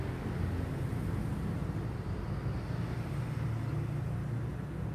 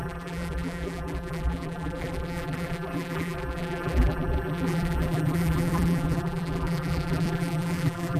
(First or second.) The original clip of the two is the first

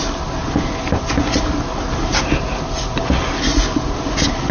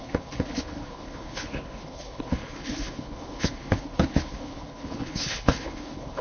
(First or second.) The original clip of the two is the first